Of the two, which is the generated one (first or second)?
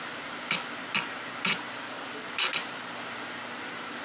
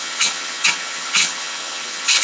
second